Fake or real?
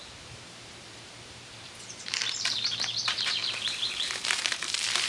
fake